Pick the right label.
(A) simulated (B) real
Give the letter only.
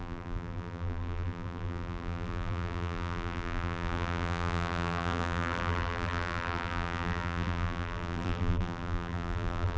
A